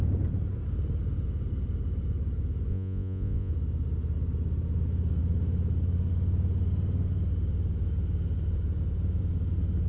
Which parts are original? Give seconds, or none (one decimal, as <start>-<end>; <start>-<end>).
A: 0.0-2.7; 3.5-9.9